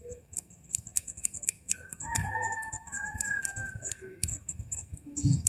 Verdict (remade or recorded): remade